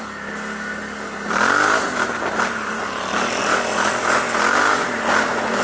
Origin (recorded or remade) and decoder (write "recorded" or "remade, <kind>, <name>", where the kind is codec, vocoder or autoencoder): recorded